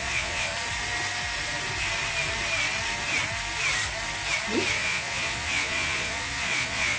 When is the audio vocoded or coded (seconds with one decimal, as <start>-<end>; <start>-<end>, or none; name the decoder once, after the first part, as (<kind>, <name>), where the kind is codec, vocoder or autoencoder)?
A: 0.0-0.5 (vocoder, Vocos); 4.7-7.0